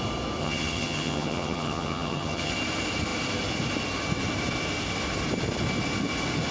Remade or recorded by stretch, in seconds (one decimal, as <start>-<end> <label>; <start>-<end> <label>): 0.0-0.4 recorded; 0.4-2.5 remade; 2.5-6.5 recorded